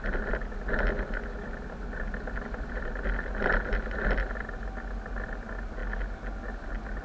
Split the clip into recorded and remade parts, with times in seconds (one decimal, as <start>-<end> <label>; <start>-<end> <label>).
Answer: 0.0-7.0 recorded